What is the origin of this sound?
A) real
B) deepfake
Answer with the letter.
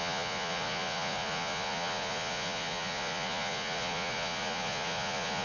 B